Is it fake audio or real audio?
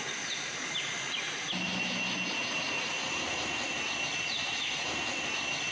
real